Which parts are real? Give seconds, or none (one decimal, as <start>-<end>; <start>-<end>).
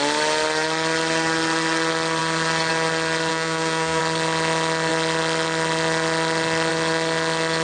0.0-3.3; 4.0-7.6